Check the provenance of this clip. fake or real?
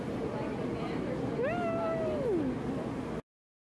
real